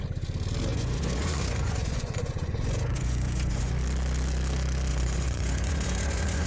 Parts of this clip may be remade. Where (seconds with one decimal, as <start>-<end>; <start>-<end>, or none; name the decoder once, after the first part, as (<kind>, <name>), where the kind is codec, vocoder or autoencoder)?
0.7-3.7 (vocoder, Vocos); 4.9-6.5